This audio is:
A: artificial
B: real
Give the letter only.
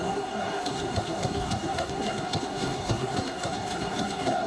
A